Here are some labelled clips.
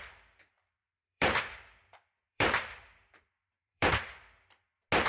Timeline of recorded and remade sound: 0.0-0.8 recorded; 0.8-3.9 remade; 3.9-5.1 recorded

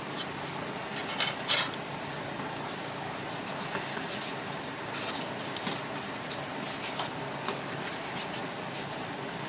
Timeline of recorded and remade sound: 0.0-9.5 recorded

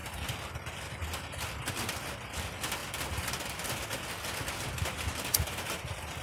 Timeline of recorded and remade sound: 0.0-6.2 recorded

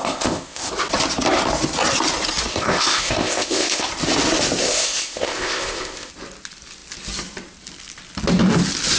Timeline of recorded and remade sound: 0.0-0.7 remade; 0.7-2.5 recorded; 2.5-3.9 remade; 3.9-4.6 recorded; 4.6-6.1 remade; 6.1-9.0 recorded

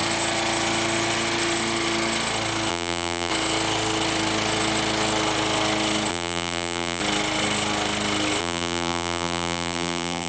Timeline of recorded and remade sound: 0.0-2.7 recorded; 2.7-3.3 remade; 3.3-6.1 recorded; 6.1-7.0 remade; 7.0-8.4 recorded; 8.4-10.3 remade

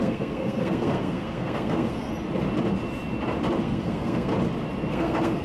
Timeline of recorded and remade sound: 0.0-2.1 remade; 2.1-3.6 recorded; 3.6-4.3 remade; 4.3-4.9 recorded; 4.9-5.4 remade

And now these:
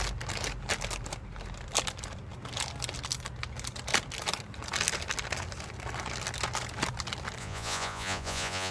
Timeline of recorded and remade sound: 0.0-7.4 recorded; 7.4-8.7 remade